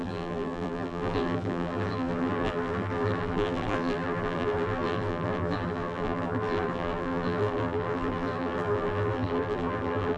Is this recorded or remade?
remade